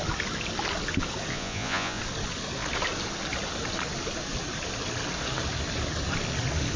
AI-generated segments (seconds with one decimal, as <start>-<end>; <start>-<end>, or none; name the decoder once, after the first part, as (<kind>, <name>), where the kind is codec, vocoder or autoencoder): 1.3-2.0 (vocoder, Vocos)